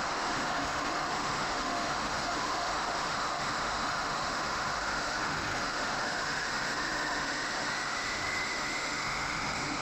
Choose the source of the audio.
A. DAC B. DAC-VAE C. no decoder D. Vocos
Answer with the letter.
B